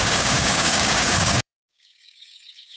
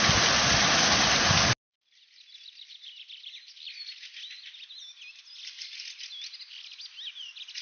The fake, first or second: first